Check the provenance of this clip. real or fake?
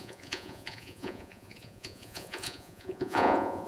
fake